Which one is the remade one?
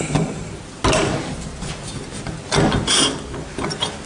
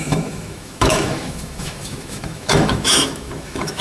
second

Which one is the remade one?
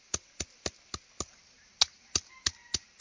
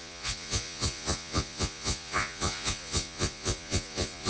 second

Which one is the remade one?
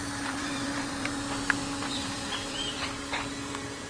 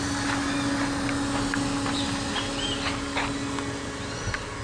first